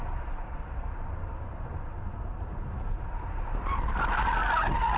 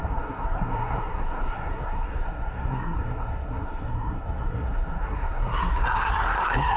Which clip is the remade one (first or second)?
second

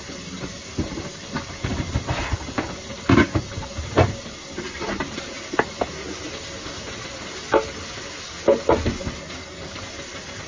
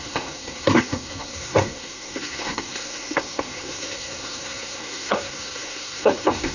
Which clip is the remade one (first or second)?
second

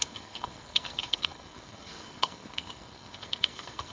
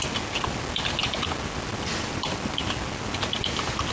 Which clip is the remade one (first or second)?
first